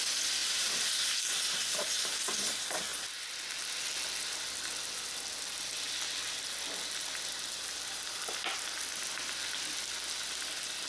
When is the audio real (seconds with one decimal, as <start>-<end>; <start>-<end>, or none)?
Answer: 0.0-0.4; 2.1-10.9